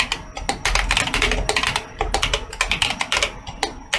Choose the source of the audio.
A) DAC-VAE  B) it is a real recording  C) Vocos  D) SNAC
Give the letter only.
B